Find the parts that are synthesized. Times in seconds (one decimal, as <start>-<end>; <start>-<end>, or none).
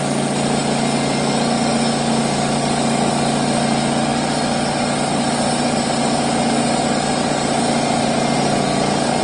none